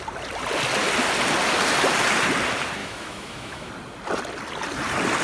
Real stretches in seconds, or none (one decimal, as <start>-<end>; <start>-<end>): 0.0-2.8; 3.7-5.2

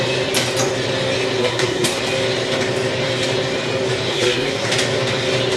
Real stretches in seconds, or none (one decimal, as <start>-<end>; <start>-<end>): 0.0-1.4; 2.0-4.1; 4.7-5.6

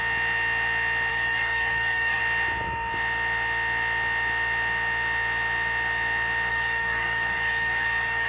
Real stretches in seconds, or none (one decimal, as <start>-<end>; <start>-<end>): 0.0-1.1; 2.2-6.5